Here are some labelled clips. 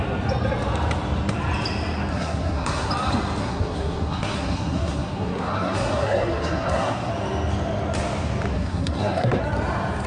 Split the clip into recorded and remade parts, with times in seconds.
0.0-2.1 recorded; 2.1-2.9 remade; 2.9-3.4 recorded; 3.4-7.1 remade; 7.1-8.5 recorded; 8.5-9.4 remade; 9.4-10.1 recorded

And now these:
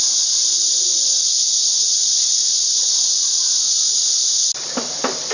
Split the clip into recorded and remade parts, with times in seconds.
0.0-1.8 recorded; 1.8-2.9 remade; 2.9-5.3 recorded

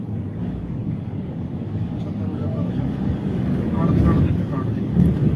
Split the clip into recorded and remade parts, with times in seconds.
0.0-5.4 remade

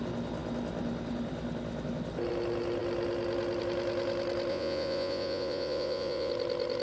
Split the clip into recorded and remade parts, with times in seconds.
0.0-4.5 recorded; 4.5-6.3 remade; 6.3-6.8 recorded

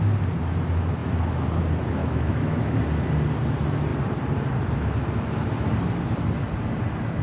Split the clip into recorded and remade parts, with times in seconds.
0.0-2.0 recorded; 2.0-2.8 remade; 2.8-7.2 recorded

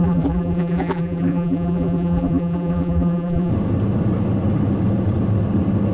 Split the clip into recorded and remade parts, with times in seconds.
0.0-3.5 remade; 3.5-5.9 recorded

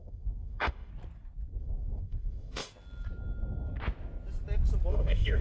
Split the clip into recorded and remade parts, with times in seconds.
0.0-0.9 remade; 0.9-1.6 recorded; 1.6-2.7 remade; 2.7-4.9 recorded; 4.9-5.4 remade